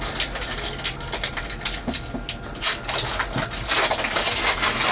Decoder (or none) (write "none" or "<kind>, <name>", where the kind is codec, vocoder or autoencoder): none